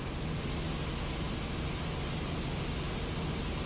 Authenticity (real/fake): real